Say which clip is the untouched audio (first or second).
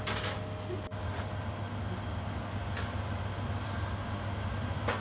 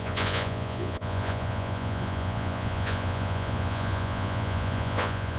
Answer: first